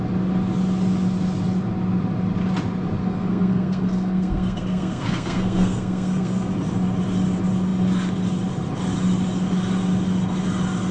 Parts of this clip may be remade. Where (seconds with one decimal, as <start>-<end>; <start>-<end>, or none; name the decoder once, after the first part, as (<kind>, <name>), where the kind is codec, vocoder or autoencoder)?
3.0-6.5 (codec, SNAC)